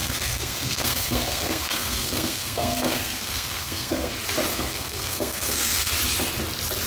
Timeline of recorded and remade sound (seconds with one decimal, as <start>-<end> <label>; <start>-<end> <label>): 0.0-4.1 remade; 4.1-4.5 recorded; 4.5-5.9 remade; 5.9-6.9 recorded